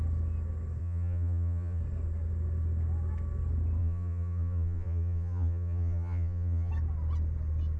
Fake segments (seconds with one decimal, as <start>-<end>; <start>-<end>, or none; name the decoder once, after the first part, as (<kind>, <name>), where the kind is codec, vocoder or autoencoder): 0.8-1.8 (vocoder, Vocos); 3.8-6.7